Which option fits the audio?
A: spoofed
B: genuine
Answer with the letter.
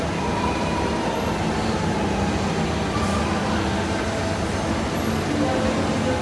B